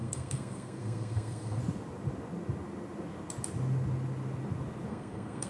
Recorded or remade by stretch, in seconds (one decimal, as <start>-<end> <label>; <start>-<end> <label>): 0.0-1.6 remade; 1.6-4.9 recorded; 4.9-5.5 remade